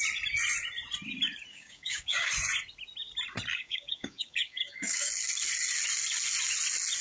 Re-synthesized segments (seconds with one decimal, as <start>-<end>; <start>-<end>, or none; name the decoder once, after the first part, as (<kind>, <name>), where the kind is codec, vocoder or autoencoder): 1.5-2.3 (codec, DAC); 3.5-5.1